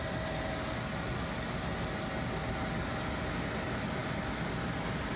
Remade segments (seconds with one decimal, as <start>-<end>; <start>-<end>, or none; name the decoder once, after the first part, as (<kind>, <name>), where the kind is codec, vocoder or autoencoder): none